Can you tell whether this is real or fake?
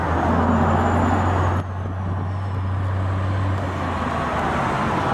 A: real